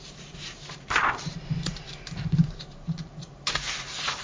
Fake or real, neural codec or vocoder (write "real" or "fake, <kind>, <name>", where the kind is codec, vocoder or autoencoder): fake, vocoder, BigVGAN v2